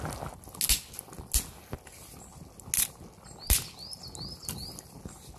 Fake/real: real